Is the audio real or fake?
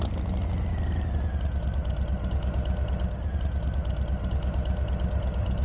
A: real